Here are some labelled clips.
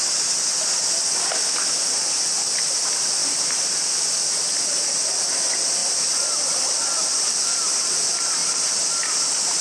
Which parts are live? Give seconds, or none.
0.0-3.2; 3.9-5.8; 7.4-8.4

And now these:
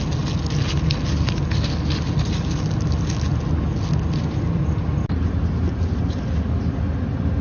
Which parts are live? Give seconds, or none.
0.0-7.4

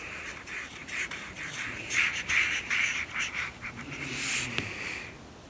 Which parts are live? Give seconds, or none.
0.0-0.8; 4.1-5.5

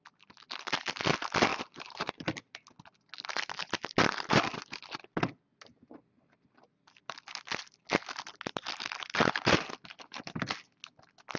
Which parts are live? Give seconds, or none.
0.0-1.5; 2.5-11.4

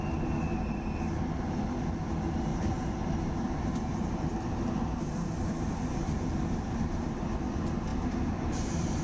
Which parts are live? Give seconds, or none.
0.0-2.5; 7.2-7.9